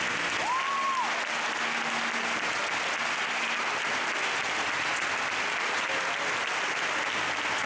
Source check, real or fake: real